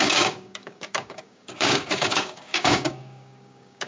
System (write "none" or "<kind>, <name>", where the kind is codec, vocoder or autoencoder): codec, DAC